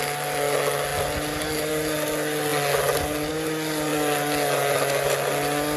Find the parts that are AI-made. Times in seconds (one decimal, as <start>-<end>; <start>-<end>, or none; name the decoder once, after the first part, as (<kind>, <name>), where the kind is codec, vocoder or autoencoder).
none